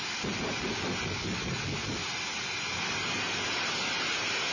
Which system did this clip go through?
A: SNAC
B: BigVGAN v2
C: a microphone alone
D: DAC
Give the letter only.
C